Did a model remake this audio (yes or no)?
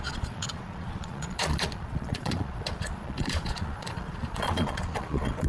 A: yes